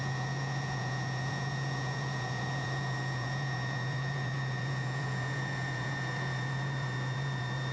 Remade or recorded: remade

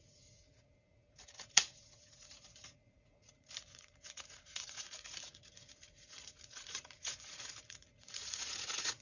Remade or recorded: remade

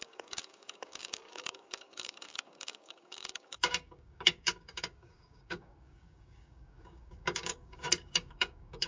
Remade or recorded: remade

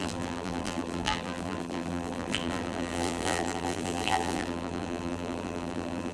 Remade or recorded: remade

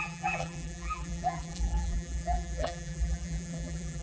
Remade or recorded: remade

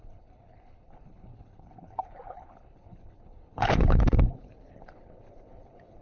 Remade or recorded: remade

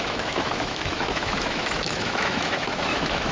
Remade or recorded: remade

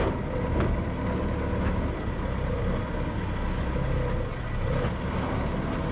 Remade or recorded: recorded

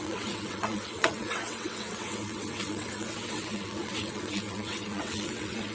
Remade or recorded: remade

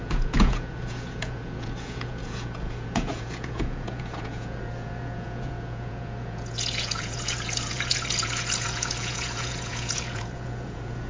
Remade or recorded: remade